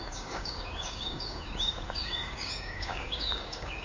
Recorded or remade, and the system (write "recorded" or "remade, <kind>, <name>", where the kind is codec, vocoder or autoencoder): remade, codec, DAC